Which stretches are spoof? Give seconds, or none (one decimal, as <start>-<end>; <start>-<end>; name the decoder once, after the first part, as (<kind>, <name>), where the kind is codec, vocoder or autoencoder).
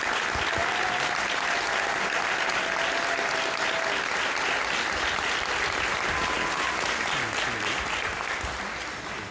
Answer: none